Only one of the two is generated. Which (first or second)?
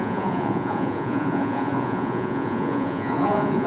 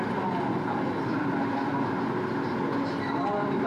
first